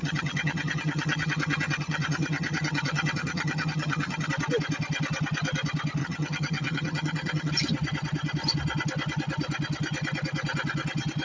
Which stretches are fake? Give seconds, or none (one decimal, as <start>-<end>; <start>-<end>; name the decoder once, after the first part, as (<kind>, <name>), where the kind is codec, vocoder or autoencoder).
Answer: 0.0-4.3 (vocoder, HiFi-GAN); 6.0-7.5